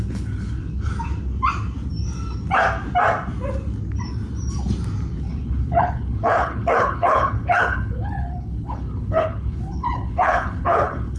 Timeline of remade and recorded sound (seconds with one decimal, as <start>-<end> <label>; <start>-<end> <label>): 0.0-0.9 remade; 0.9-5.2 recorded; 5.2-11.2 remade